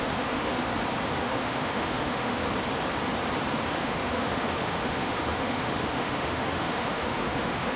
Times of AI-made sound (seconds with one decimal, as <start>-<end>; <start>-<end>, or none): 0.0-0.7; 1.2-2.4; 3.7-7.8